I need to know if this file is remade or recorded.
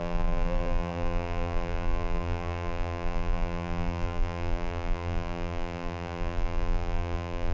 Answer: remade